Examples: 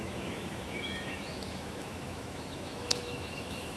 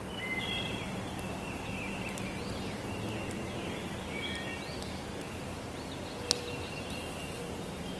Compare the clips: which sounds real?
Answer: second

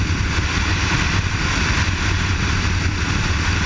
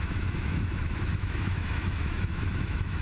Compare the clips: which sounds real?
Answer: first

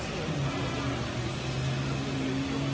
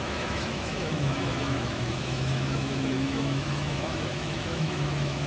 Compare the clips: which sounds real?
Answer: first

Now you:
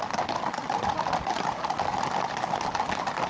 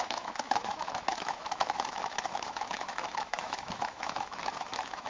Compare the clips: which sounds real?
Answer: first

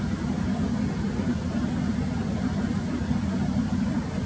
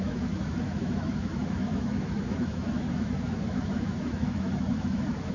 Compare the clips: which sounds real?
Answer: first